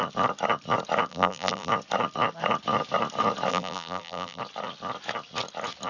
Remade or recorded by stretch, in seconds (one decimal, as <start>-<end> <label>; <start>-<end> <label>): 0.0-1.1 recorded; 1.1-1.7 remade; 1.7-3.5 recorded; 3.5-4.4 remade; 4.4-5.9 recorded